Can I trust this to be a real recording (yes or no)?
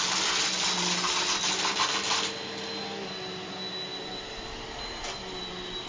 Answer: yes